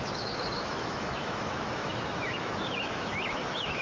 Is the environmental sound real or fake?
fake